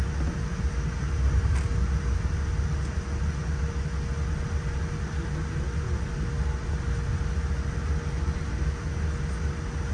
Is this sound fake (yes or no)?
no